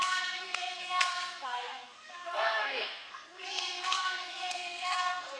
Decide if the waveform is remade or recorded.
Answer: remade